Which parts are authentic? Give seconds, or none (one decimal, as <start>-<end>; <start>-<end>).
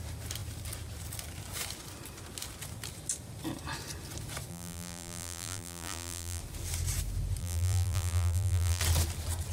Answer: 0.0-4.5; 6.4-7.4; 8.8-9.5